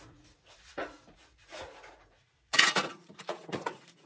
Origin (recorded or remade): remade